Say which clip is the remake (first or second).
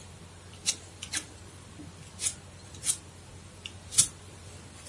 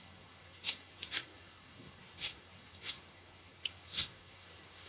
second